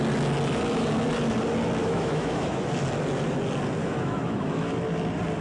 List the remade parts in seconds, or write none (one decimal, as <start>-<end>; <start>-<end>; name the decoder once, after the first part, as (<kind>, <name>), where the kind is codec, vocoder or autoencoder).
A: 1.8-2.7 (autoencoder, DAC-VAE); 3.8-4.7